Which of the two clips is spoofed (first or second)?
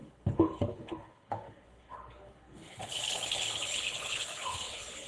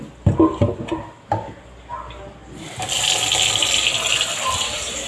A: first